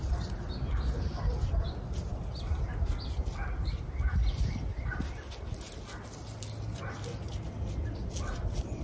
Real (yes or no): yes